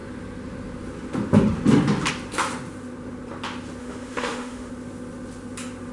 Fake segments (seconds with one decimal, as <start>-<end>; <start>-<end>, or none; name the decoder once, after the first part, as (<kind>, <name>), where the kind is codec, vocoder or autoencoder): 3.8-4.7 (autoencoder, DAC-VAE)